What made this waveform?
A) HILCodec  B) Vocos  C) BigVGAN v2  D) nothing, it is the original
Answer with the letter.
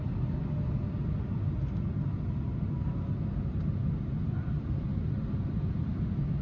D